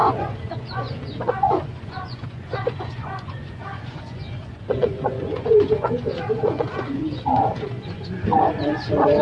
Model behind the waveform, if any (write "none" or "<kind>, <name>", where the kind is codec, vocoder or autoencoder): vocoder, Vocos